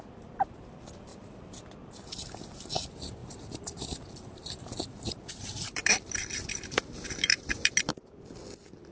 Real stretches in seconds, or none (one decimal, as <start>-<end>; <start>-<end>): 0.0-1.1; 1.6-3.2; 7.7-8.9